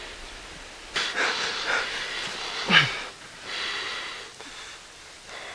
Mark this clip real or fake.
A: real